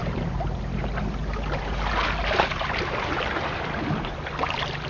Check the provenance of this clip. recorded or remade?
recorded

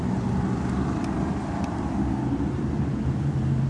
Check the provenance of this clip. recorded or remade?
remade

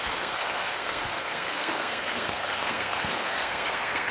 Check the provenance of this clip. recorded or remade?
remade